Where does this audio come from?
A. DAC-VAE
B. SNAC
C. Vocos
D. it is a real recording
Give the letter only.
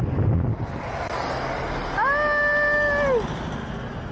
D